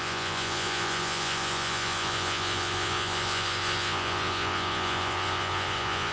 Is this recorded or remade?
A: remade